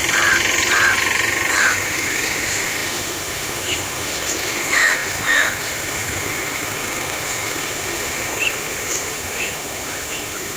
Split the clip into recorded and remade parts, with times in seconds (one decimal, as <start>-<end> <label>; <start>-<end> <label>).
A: 0.0-1.6 recorded; 1.6-10.6 remade

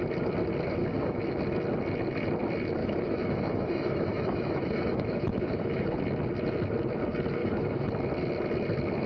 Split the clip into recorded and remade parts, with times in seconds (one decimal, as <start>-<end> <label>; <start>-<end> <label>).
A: 0.0-0.8 recorded; 0.8-1.4 remade; 1.4-2.8 recorded; 2.8-6.0 remade; 6.0-7.4 recorded; 7.4-7.9 remade; 7.9-9.1 recorded

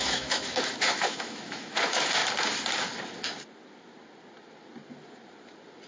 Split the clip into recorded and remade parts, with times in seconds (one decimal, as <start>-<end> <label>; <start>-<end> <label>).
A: 0.0-2.2 remade; 2.2-5.9 recorded

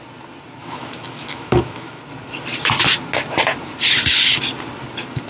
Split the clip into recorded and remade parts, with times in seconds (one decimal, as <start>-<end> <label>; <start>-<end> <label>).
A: 0.0-0.6 recorded; 0.6-2.0 remade; 2.0-5.3 recorded